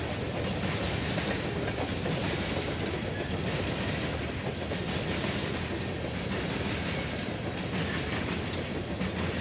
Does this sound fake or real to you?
real